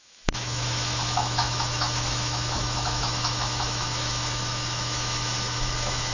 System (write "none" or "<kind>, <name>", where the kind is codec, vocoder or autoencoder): autoencoder, DAC-VAE